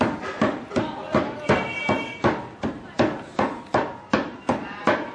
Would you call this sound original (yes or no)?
yes